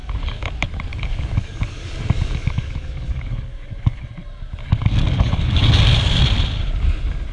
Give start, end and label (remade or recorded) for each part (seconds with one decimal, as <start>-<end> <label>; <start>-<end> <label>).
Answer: 0.0-0.5 remade; 0.5-0.9 recorded; 0.9-4.1 remade; 4.1-4.6 recorded; 4.6-5.7 remade; 5.7-7.3 recorded